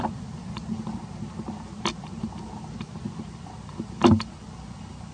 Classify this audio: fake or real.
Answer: real